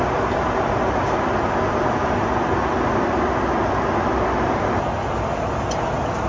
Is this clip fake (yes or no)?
no